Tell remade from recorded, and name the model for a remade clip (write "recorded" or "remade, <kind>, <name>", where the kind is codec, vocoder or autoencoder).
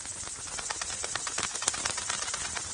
recorded